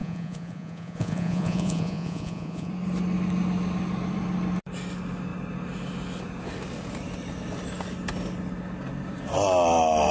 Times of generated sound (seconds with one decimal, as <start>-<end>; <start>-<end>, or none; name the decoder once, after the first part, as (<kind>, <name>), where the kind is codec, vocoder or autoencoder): 0.0-2.7 (vocoder, Vocos)